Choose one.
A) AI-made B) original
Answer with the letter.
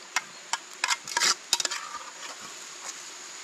B